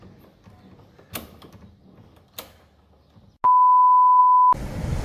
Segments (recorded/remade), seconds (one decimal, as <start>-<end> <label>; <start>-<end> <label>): 0.0-5.0 recorded